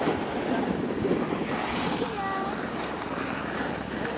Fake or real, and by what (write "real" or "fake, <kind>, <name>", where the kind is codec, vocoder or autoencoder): real